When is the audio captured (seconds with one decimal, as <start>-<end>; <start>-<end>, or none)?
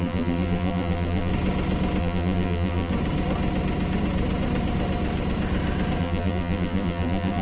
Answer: 1.3-2.0; 2.9-6.0